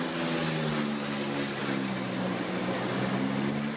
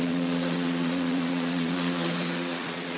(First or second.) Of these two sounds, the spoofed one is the second